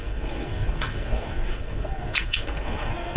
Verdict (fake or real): fake